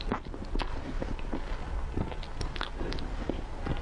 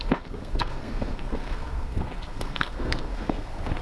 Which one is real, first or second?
first